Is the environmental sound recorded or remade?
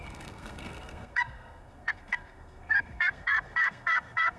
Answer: remade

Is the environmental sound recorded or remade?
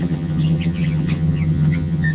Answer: remade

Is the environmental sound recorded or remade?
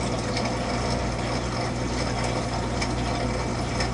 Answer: recorded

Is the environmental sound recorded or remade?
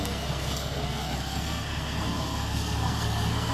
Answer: remade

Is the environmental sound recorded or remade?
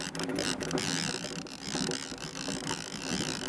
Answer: recorded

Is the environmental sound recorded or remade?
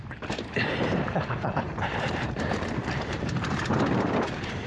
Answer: remade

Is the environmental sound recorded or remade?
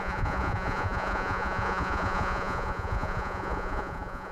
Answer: remade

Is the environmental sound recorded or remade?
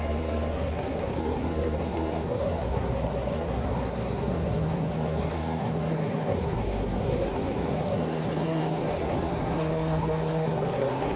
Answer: remade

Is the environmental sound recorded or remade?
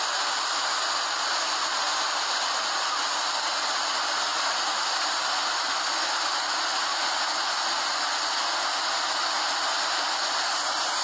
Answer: recorded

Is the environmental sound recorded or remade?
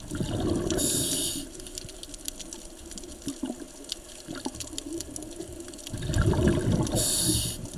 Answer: recorded